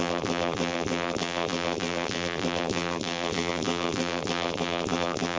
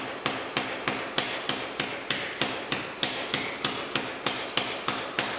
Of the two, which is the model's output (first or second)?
first